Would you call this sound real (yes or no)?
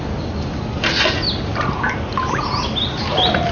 yes